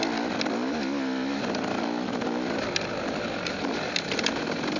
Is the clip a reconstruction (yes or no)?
no